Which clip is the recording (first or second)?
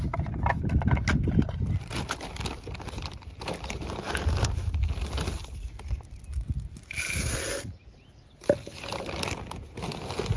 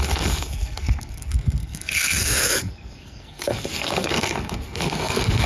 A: first